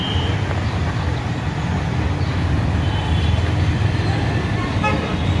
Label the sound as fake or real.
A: real